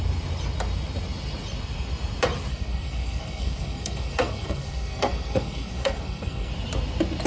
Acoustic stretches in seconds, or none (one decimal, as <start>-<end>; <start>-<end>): 0.0-2.5; 6.5-7.3

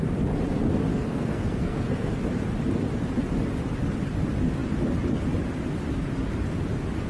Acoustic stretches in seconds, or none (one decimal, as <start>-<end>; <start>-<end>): 0.0-0.9; 2.2-7.1

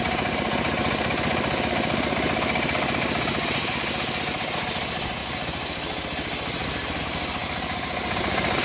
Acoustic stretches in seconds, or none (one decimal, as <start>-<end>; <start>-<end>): 0.0-8.6

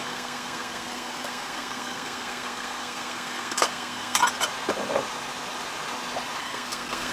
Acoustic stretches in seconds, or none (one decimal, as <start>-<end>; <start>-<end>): 4.2-6.4